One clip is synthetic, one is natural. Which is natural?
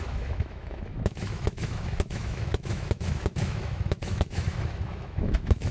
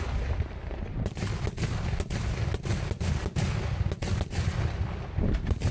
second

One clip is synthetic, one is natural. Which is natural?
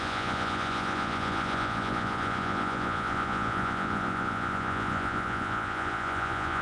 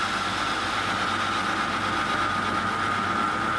second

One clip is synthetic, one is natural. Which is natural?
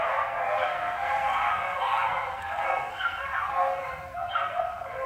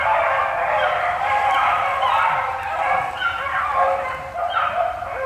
second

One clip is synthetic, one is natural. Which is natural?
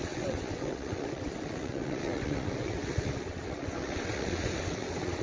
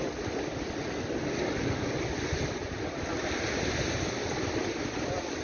second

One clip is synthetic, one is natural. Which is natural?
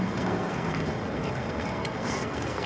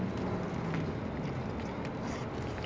second